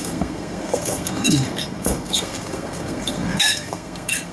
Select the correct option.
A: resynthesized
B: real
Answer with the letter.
A